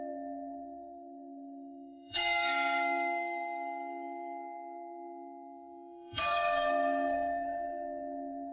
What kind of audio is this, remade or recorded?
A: remade